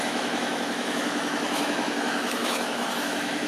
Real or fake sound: fake